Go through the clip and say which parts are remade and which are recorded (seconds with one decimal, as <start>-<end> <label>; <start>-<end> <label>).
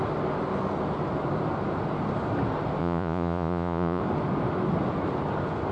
0.0-2.8 recorded; 2.8-4.0 remade; 4.0-5.7 recorded